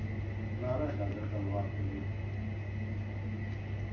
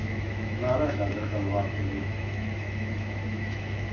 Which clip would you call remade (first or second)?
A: second